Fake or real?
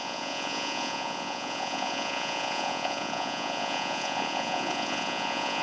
fake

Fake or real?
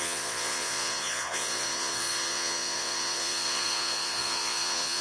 fake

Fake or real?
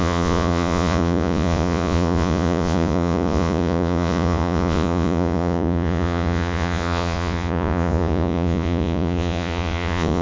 fake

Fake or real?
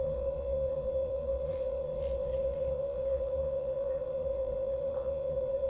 fake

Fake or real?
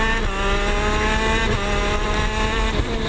real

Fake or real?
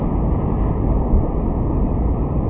real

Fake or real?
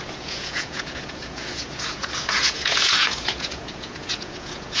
fake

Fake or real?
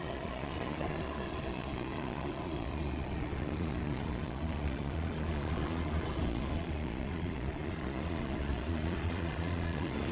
fake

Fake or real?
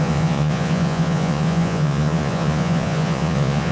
fake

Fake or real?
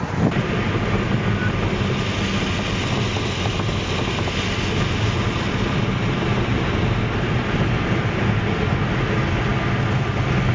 real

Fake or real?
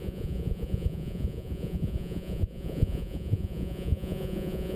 fake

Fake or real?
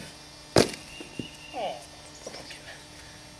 real